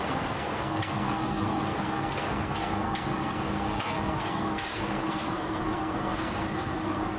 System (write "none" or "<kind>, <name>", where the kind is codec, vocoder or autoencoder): codec, SNAC